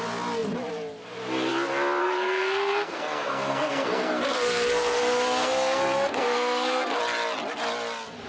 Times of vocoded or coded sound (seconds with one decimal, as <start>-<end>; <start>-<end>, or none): 2.0-7.0